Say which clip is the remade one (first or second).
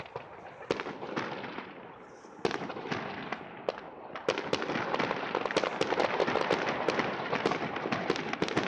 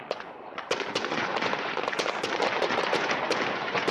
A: second